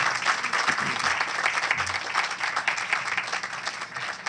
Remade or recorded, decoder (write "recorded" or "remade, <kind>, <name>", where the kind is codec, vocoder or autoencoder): recorded